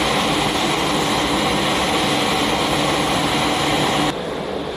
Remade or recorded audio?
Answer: recorded